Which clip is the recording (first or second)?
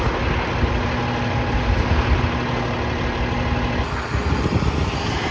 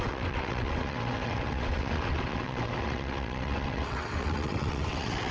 first